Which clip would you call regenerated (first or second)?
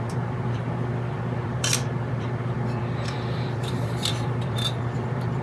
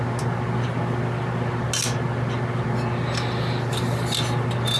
first